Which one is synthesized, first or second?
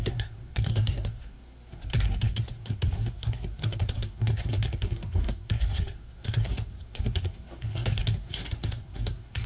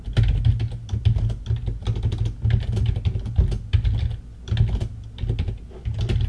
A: first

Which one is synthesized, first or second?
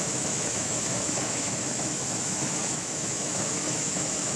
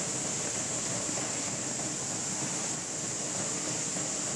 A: first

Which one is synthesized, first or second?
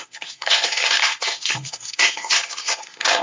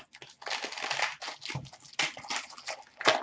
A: first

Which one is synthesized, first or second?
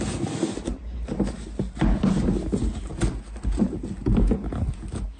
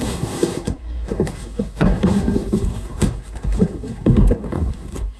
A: second